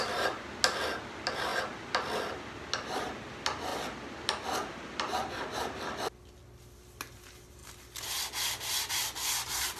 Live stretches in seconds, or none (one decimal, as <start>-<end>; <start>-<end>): 0.0-9.8